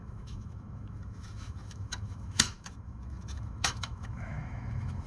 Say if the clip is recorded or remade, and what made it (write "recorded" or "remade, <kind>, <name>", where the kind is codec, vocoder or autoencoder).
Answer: remade, autoencoder, DAC-VAE